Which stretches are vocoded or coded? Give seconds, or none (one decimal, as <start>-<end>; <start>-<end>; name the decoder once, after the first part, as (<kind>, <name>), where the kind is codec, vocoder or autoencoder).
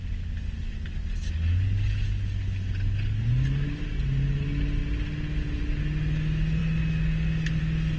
none